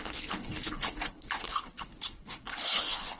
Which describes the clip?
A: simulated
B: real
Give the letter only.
A